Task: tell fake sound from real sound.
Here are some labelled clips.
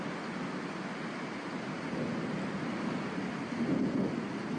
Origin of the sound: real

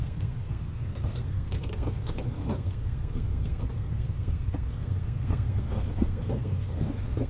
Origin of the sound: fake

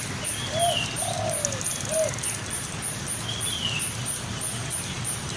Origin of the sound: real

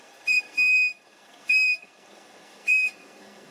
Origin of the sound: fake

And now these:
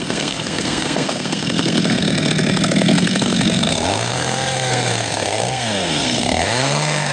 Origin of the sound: fake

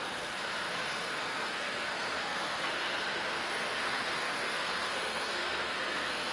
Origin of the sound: fake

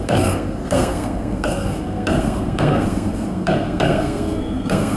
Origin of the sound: fake